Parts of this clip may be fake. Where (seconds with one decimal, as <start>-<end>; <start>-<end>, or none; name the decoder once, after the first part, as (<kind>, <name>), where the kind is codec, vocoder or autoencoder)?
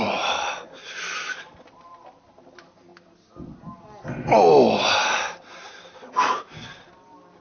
none